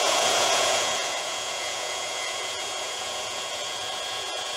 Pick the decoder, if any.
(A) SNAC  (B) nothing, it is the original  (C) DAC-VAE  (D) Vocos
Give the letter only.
D